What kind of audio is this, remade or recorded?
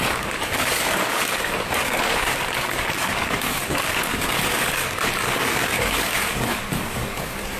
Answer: remade